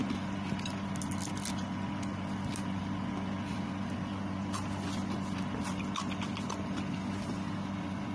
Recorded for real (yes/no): yes